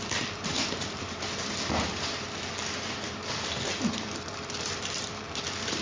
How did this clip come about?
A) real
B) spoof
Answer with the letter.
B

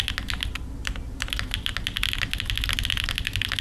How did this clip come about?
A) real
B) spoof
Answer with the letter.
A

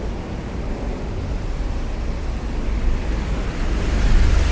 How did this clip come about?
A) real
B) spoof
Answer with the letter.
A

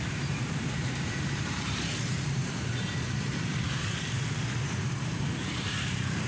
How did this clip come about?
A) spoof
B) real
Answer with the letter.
A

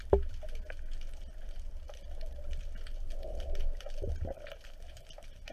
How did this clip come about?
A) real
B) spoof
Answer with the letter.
A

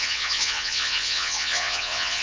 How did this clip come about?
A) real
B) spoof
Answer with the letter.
B